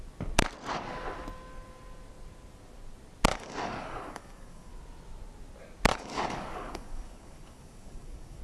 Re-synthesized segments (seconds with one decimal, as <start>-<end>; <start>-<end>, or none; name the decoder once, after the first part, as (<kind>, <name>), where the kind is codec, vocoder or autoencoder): 3.3-4.7 (codec, DAC); 5.9-8.4